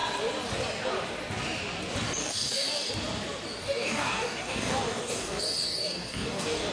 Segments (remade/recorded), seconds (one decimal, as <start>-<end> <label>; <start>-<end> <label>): 0.0-2.2 recorded; 2.2-2.9 remade; 2.9-3.6 recorded; 3.6-6.7 remade